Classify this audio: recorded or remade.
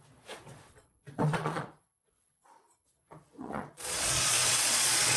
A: remade